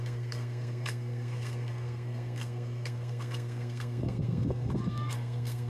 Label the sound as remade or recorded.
remade